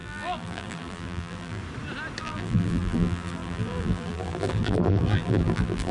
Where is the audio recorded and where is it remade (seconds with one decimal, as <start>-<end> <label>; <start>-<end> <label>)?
0.0-1.6 remade; 1.6-2.2 recorded; 2.2-5.9 remade